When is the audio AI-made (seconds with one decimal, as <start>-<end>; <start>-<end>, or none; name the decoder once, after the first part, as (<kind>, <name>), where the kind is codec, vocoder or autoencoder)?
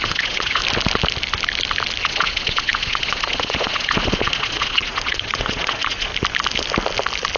0.0-0.6 (vocoder, Vocos); 2.0-6.1